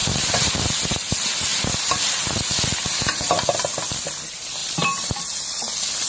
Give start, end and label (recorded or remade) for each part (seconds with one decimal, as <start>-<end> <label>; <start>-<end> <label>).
0.0-0.5 remade; 0.5-1.5 recorded; 1.5-3.4 remade; 3.4-4.6 recorded; 4.6-5.2 remade; 5.2-6.1 recorded